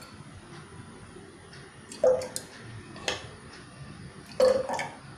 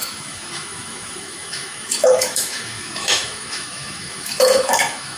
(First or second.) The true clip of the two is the first